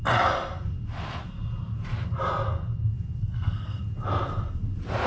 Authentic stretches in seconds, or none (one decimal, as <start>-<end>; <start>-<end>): 0.0-3.2; 3.8-5.1